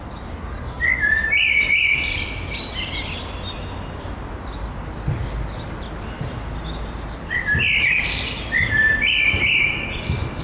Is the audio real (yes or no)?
yes